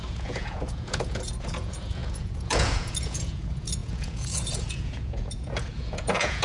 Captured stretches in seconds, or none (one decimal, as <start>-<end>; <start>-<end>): none